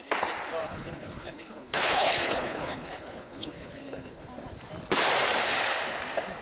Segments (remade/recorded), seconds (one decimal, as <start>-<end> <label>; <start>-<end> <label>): 0.0-0.6 recorded; 0.6-4.2 remade; 4.2-6.4 recorded